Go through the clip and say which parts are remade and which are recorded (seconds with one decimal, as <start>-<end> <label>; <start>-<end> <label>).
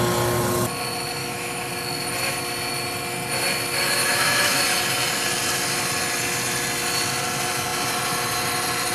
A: 0.0-1.2 recorded; 1.2-1.7 remade; 1.7-4.0 recorded; 4.0-4.6 remade; 4.6-8.9 recorded